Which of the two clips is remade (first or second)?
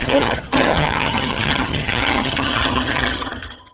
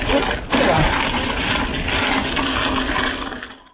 first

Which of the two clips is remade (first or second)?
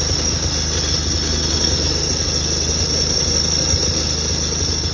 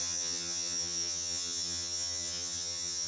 second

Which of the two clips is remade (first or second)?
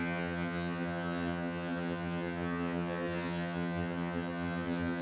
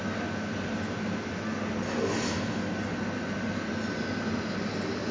first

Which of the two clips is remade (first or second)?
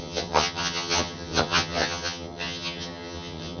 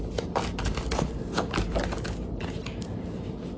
first